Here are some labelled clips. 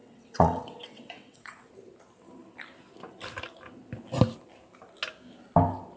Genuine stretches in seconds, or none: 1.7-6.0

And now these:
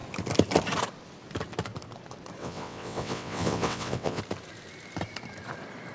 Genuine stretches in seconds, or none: 0.0-2.4; 4.2-5.9

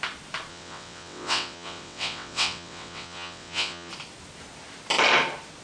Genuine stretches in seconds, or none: 0.0-0.5; 3.9-5.6

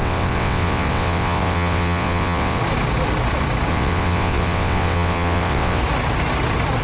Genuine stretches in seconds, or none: 2.6-3.7; 5.8-6.8

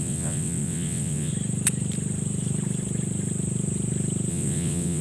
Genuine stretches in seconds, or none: 1.3-4.3